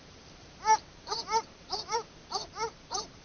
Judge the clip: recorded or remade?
remade